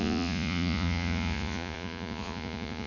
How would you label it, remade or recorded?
remade